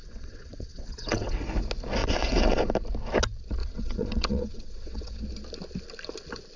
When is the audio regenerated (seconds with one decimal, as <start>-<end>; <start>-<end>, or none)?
0.0-1.5; 2.0-2.6; 3.6-5.2